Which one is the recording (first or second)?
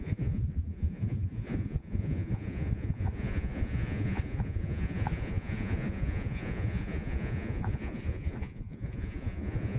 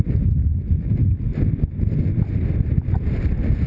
second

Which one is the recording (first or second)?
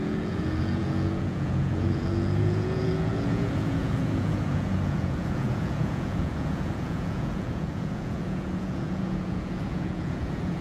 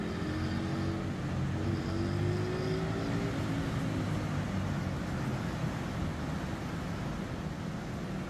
second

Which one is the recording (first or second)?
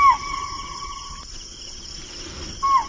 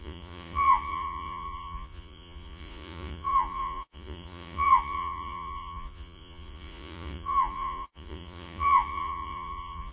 first